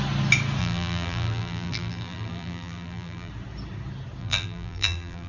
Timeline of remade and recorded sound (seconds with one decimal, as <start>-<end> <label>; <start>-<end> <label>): 0.0-0.6 recorded; 0.6-3.3 remade; 3.3-4.2 recorded; 4.2-5.3 remade